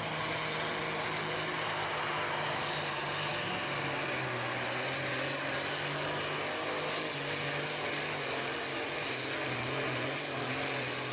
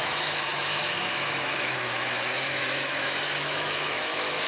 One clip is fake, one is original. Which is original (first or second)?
first